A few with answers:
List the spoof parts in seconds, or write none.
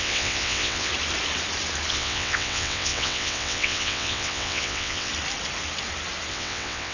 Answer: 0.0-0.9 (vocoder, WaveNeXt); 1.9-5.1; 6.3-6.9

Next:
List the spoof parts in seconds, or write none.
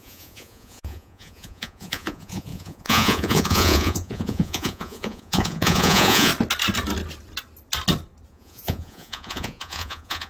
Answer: 0.0-6.3 (vocoder, Vocos); 8.3-10.3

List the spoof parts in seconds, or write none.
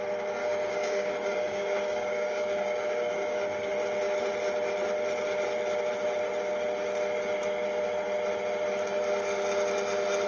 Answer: 0.4-3.7 (codec, DAC)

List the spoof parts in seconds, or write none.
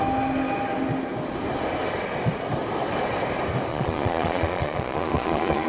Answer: 3.7-5.7 (vocoder, Vocos)